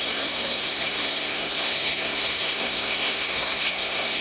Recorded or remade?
remade